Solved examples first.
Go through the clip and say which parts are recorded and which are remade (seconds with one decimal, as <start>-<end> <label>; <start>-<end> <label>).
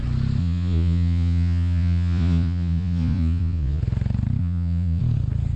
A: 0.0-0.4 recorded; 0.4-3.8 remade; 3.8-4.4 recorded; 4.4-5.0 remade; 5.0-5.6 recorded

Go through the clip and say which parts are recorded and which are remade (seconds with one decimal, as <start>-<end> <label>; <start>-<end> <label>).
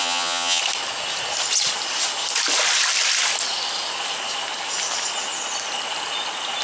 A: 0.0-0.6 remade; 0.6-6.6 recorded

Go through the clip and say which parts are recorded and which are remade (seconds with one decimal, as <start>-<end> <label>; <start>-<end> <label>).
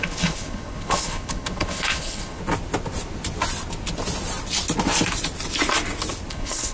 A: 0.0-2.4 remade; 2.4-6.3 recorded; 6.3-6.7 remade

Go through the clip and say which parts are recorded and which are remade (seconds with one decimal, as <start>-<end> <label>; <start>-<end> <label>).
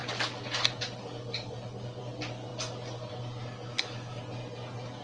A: 0.0-3.7 recorded; 3.7-4.2 remade; 4.2-5.0 recorded